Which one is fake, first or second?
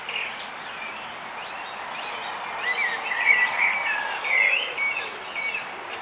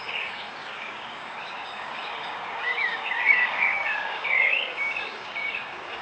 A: second